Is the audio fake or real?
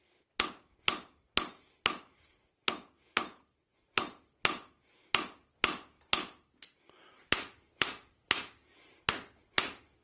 real